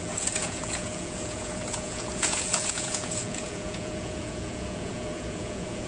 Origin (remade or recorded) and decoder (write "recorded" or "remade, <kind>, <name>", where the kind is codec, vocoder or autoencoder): remade, vocoder, Vocos